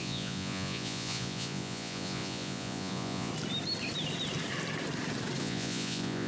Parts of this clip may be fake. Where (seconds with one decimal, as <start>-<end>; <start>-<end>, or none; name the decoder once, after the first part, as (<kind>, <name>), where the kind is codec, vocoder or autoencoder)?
0.0-3.3 (vocoder, Vocos); 5.4-6.3